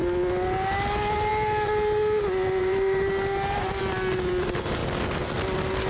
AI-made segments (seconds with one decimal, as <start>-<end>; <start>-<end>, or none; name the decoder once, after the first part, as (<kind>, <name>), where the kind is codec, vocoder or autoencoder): 2.6-3.8 (vocoder, BigVGAN v2)